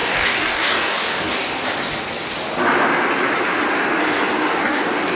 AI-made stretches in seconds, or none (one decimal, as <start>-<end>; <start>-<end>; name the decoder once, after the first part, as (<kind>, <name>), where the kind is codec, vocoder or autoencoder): 0.0-1.4 (codec, DAC); 4.5-5.1